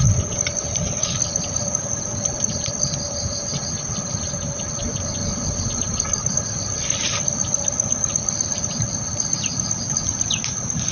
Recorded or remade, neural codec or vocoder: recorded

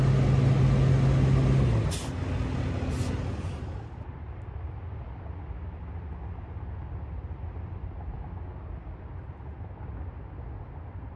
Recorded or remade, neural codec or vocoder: recorded